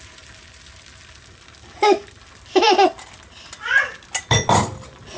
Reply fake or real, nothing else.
real